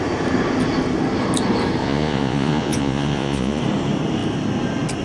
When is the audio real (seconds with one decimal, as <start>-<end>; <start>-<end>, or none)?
0.0-1.8; 3.6-5.0